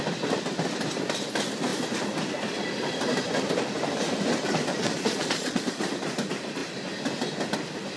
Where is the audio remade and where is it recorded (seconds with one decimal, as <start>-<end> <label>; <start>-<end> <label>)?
0.0-4.7 recorded; 4.7-5.6 remade; 5.6-8.0 recorded

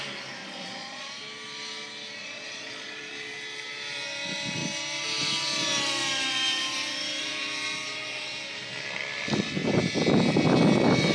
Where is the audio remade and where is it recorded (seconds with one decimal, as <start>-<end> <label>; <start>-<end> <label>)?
0.0-0.4 recorded; 0.4-1.1 remade; 1.1-2.2 recorded; 2.2-3.0 remade; 3.0-11.1 recorded

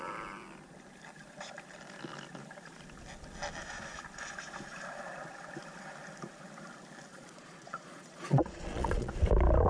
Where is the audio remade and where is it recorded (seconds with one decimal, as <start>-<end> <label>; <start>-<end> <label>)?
0.0-7.1 recorded; 7.1-9.1 remade; 9.1-9.7 recorded

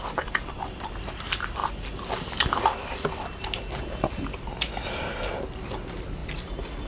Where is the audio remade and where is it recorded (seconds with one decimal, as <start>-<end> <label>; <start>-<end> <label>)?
0.0-6.9 recorded

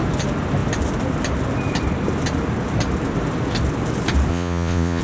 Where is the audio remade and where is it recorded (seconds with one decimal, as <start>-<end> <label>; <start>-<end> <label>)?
0.0-4.3 recorded; 4.3-5.0 remade

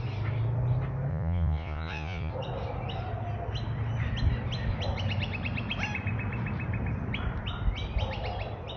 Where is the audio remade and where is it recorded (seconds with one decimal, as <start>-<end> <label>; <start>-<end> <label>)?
0.0-1.1 recorded; 1.1-2.3 remade; 2.3-8.8 recorded